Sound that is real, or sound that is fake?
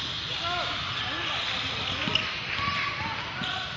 real